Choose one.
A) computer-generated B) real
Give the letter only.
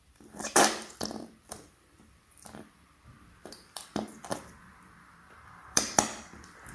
A